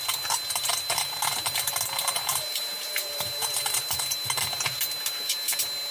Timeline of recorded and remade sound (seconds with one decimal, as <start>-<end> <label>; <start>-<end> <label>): 0.0-2.3 recorded; 2.3-4.0 remade; 4.0-5.9 recorded